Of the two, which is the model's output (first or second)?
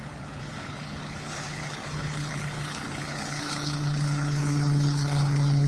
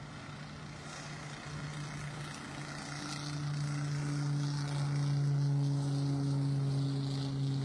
first